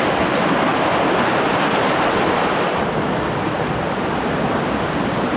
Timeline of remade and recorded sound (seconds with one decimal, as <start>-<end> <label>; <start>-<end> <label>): 0.0-5.4 recorded